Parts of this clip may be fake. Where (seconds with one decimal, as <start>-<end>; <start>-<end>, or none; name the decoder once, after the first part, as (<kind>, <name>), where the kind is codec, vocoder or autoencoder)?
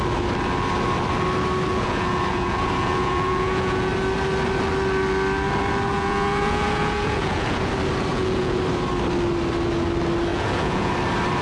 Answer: 1.7-3.9 (vocoder, Vocos); 5.9-7.7; 8.1-8.6; 10.3-10.9